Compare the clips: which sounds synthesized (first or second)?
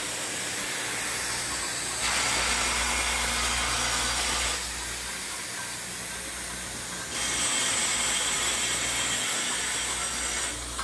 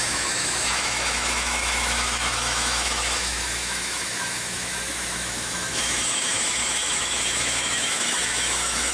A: second